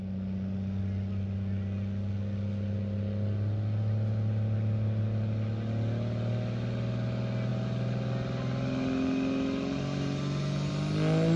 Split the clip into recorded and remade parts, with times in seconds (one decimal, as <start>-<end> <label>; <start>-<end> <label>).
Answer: 0.0-11.4 recorded